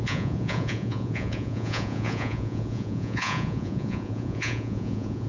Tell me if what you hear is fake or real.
fake